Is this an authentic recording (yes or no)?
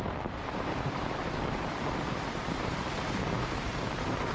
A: no